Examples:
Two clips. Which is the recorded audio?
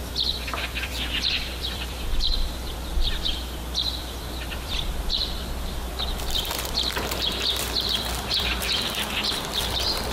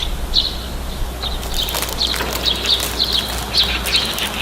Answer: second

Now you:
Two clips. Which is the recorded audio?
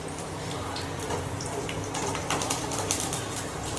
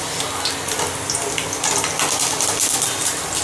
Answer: second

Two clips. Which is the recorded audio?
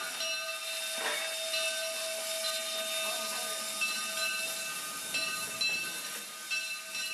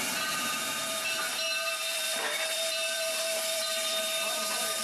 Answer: first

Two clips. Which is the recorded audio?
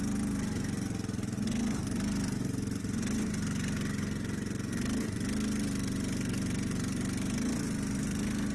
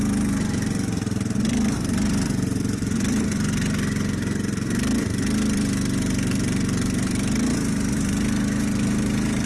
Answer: first